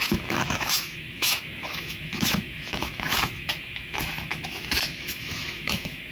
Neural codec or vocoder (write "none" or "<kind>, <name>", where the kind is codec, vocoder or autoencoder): autoencoder, DAC-VAE